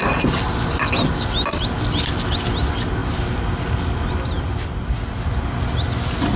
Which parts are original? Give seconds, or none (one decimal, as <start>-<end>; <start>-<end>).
0.0-6.4